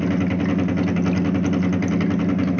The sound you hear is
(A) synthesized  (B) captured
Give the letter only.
B